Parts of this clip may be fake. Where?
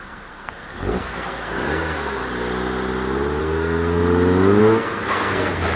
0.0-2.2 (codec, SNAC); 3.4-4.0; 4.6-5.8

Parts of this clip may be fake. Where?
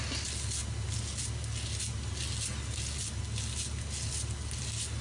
none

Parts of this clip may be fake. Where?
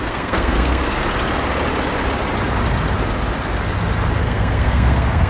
0.0-1.0 (codec, SNAC); 4.2-5.3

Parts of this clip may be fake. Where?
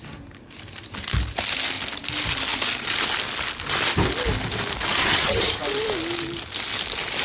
5.0-5.6 (vocoder, HiFi-GAN)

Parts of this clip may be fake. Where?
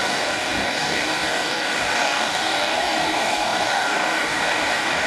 0.0-5.1 (codec, DAC)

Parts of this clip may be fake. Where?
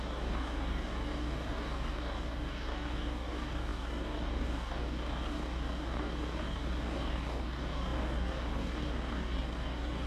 0.0-10.1 (codec, DAC)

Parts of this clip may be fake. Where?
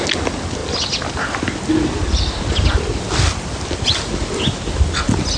none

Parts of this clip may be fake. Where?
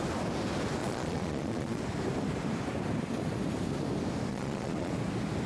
0.8-1.8 (vocoder, Vocos); 4.3-4.9